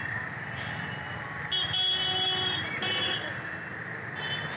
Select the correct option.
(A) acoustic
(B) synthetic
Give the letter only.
A